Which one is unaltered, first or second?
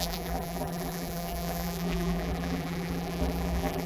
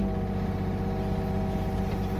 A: second